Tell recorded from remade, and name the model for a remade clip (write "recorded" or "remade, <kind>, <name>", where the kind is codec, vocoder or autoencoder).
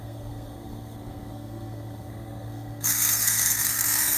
remade, codec, SNAC